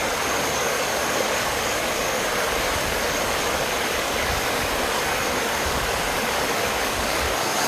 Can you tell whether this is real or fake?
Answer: fake